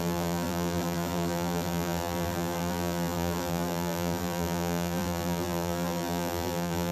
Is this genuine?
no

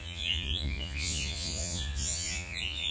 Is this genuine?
no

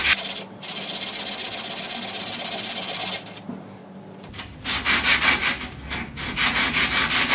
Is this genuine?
yes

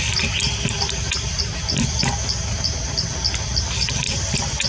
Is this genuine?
yes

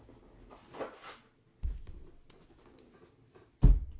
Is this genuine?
yes